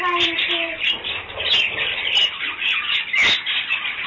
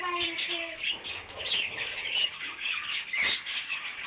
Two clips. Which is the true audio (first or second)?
first